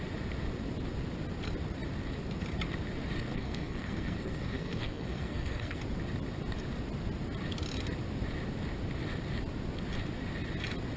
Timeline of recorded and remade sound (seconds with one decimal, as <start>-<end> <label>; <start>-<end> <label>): 0.0-3.3 recorded; 3.3-5.8 remade; 5.8-11.0 recorded